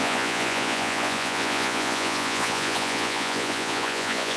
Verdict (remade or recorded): remade